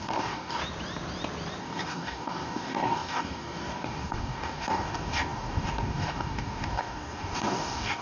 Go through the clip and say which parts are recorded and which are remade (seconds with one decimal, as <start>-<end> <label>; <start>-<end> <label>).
0.0-0.6 remade; 0.6-1.6 recorded; 1.6-8.0 remade